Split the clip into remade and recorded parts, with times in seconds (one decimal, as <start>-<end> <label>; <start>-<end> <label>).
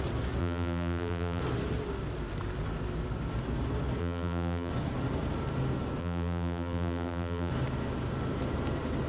0.0-0.4 recorded; 0.4-1.4 remade; 1.4-4.0 recorded; 4.0-4.7 remade; 4.7-6.0 recorded; 6.0-7.5 remade; 7.5-9.1 recorded